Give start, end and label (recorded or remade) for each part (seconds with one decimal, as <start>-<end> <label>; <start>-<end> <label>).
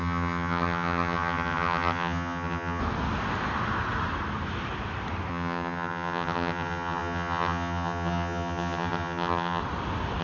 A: 0.0-2.8 remade; 2.8-5.3 recorded; 5.3-9.6 remade; 9.6-10.2 recorded